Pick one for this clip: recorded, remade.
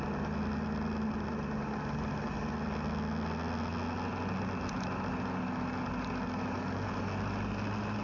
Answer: recorded